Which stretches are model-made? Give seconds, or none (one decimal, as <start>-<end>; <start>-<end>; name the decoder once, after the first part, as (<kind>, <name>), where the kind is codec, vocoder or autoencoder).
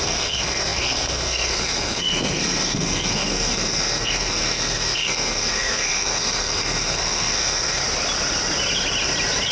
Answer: 0.0-7.8 (codec, SNAC)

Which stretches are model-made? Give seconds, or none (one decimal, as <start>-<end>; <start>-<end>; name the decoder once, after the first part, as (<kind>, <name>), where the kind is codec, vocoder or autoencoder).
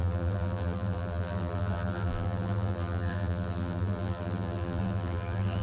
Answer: 0.0-5.6 (vocoder, BigVGAN v2)